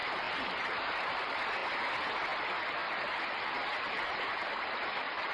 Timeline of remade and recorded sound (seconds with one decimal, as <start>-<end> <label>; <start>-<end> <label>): 0.0-1.4 remade; 1.4-5.3 recorded